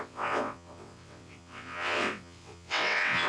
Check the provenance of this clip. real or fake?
fake